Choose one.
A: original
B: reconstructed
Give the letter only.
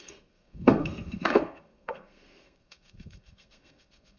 B